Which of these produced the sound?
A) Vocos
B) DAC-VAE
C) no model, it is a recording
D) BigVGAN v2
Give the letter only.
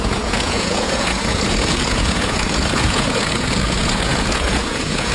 A